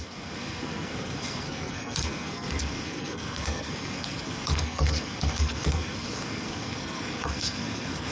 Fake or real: fake